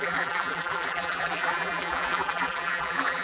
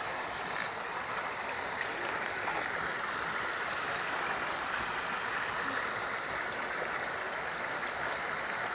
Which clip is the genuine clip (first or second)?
second